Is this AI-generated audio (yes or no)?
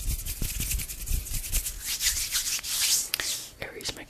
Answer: no